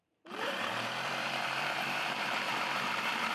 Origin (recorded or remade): remade